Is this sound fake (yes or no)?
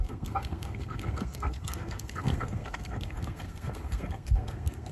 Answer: yes